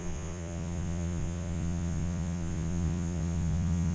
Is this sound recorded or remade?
remade